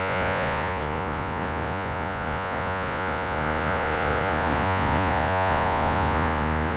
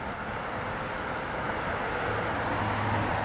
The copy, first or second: first